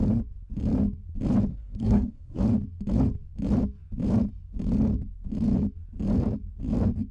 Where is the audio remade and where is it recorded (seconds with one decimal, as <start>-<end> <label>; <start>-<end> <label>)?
0.0-1.5 recorded; 1.5-2.4 remade; 2.4-7.1 recorded